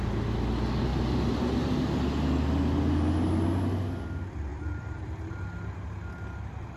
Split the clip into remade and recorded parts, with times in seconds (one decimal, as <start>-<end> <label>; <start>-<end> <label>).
0.0-0.9 recorded; 0.9-1.8 remade; 1.8-4.5 recorded; 4.5-5.1 remade; 5.1-6.8 recorded